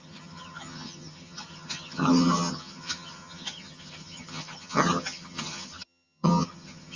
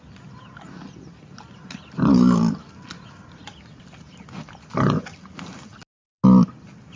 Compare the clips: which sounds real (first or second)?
second